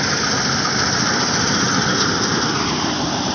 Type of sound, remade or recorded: recorded